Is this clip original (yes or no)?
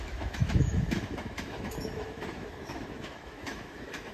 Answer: no